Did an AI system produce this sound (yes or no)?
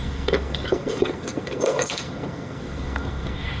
yes